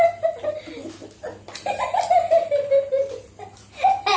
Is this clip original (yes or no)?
yes